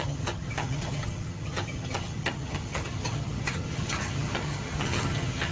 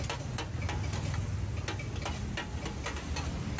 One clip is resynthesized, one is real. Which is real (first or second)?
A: second